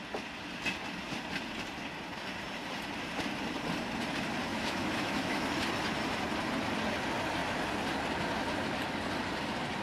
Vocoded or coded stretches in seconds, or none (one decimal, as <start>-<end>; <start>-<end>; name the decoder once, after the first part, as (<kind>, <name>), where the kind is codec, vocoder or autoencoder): 4.5-5.5 (autoencoder, DAC-VAE)